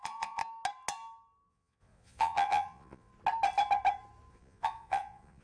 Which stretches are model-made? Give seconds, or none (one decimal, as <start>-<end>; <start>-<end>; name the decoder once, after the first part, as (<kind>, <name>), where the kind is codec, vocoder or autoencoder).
0.0-0.4 (vocoder, Vocos); 1.5-3.1; 4.3-5.4